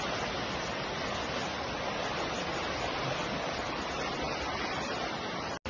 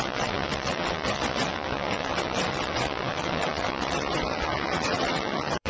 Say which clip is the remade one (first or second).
second